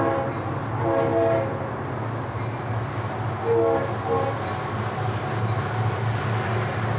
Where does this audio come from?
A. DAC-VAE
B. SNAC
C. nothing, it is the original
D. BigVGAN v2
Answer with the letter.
C